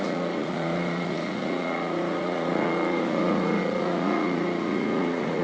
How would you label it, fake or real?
fake